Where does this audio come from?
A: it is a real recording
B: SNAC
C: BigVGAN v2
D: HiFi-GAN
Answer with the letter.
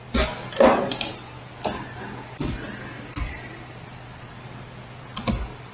A